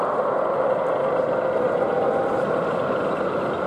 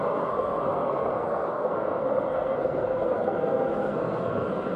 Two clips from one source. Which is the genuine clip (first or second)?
first